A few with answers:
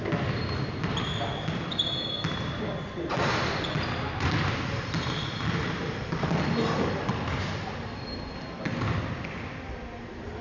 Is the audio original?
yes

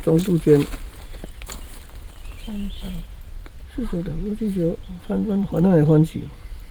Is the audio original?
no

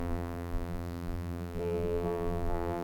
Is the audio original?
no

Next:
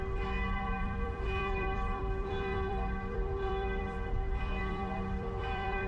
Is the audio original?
no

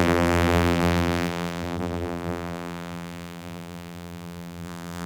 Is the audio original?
no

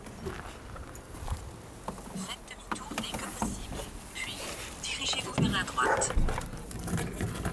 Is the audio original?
yes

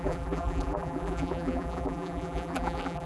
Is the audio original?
no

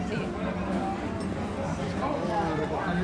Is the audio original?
yes